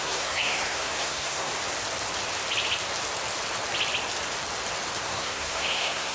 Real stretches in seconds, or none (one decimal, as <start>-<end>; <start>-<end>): 1.5-5.0